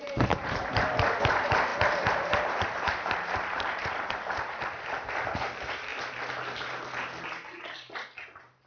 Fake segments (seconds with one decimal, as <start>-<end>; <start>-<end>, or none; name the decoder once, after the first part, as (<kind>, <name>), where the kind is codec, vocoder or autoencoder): 0.0-5.9 (vocoder, BigVGAN v2); 7.9-8.7

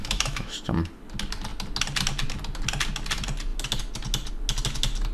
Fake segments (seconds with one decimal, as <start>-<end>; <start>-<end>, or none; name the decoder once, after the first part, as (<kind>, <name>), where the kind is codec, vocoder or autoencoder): 0.0-0.9 (autoencoder, DAC-VAE)

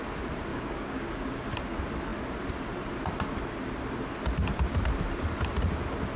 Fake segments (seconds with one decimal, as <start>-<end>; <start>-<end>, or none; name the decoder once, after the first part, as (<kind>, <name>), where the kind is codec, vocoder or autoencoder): 0.5-1.1 (codec, DAC)